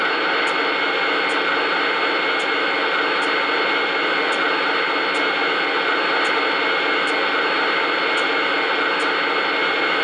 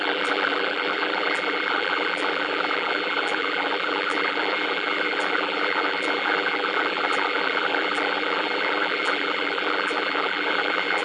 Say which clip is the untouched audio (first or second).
first